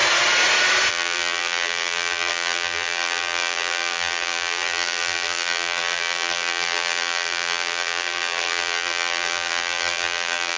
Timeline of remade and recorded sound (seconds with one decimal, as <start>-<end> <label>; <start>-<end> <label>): 0.0-0.9 recorded; 0.9-10.6 remade